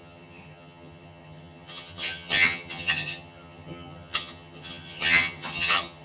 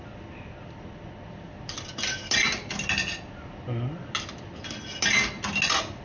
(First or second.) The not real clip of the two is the first